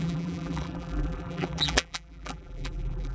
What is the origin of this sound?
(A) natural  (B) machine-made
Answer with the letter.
B